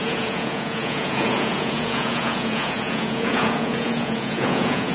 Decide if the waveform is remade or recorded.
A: remade